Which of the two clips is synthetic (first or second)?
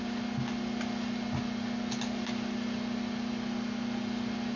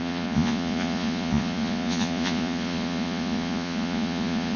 second